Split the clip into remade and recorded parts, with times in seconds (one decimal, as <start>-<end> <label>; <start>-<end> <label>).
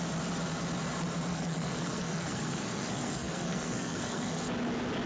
0.0-1.3 recorded; 1.3-4.4 remade; 4.4-5.1 recorded